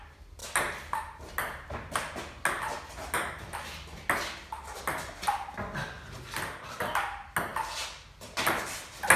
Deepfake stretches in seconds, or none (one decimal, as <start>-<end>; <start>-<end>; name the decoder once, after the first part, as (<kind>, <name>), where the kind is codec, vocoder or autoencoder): none